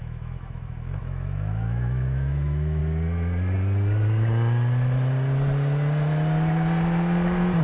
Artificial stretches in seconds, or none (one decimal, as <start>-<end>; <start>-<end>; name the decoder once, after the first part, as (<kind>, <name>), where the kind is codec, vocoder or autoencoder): 0.0-2.8 (autoencoder, DAC-VAE)